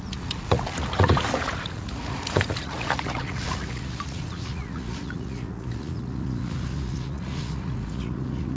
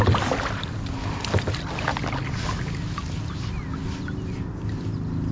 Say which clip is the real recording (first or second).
second